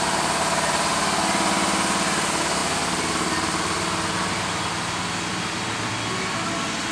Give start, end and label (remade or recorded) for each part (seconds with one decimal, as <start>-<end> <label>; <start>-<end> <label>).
0.0-6.9 recorded